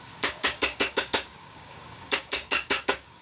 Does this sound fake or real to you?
fake